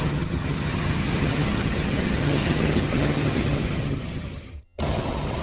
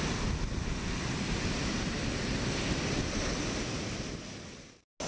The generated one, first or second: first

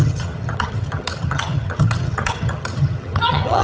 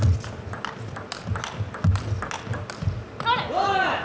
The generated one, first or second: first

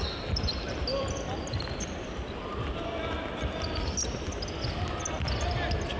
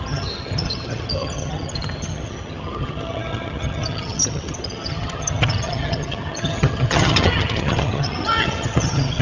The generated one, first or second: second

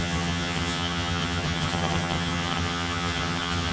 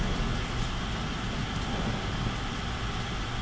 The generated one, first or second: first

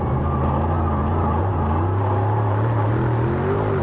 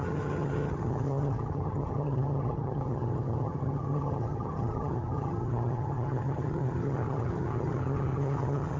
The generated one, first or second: second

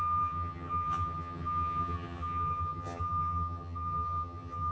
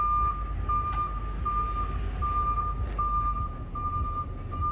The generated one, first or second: first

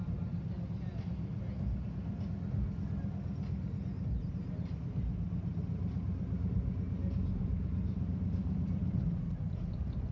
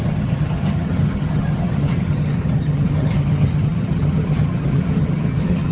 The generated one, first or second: second